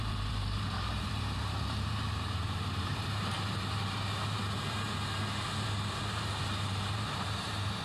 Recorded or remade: remade